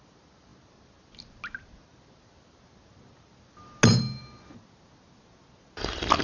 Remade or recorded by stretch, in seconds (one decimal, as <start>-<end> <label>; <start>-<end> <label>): 0.0-6.2 recorded